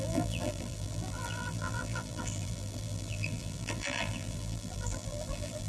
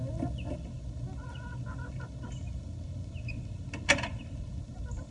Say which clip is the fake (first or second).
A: first